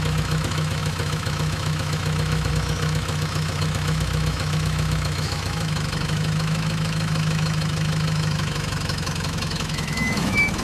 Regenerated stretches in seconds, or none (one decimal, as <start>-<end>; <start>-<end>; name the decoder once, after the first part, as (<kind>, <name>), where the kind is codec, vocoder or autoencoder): 0.0-10.6 (autoencoder, DAC-VAE)